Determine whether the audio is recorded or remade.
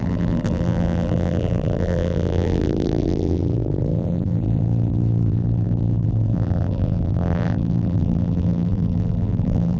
remade